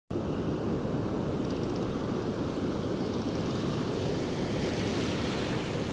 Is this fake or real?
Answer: real